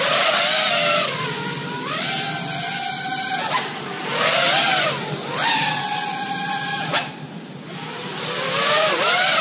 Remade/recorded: recorded